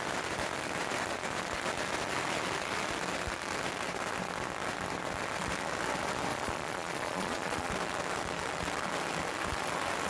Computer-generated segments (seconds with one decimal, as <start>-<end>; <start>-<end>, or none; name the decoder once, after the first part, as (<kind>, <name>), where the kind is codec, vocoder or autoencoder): 6.3-7.7 (vocoder, Vocos)